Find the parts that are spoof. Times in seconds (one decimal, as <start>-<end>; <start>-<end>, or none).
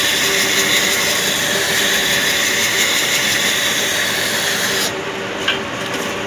2.0-5.0